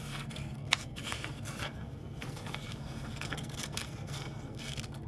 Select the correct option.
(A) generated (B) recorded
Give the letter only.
A